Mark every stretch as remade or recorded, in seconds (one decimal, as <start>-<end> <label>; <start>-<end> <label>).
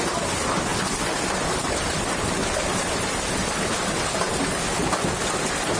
0.0-0.7 recorded; 0.7-4.2 remade; 4.2-5.8 recorded